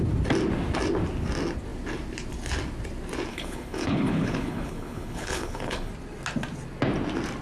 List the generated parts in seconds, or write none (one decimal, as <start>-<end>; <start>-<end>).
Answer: 3.3-5.9